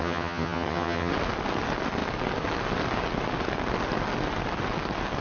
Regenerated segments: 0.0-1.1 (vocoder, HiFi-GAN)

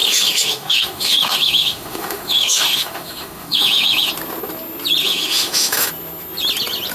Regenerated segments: 0.0-4.1 (autoencoder, DAC-VAE); 5.0-5.9

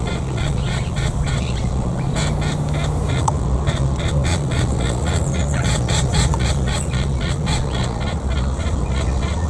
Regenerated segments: 0.0-2.2 (vocoder, Vocos); 3.1-9.5

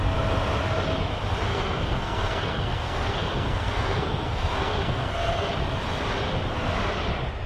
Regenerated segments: 1.5-5.5 (codec, SNAC)